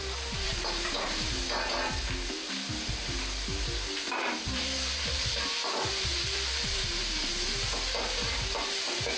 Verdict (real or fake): fake